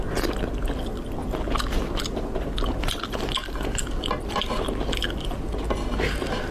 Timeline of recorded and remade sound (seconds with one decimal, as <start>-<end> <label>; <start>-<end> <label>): 0.0-6.5 recorded